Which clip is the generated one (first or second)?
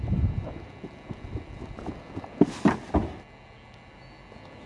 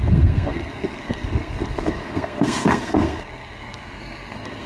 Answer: second